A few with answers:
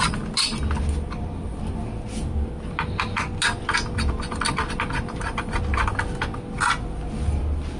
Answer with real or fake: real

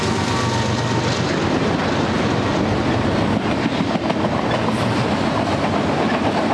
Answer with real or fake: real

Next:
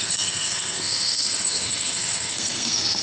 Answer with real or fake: fake